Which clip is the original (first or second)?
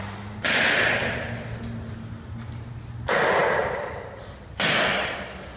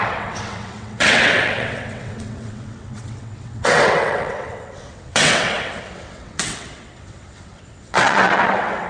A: first